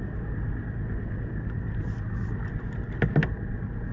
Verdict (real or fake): real